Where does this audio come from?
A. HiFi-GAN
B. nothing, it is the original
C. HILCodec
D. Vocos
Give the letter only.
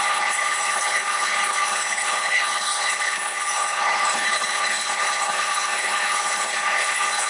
C